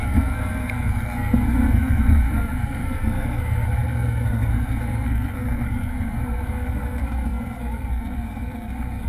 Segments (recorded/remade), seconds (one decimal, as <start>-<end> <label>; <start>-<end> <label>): 0.0-9.1 remade